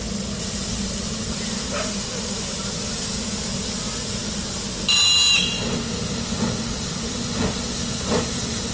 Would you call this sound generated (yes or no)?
no